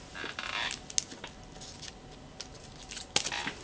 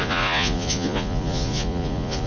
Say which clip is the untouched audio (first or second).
first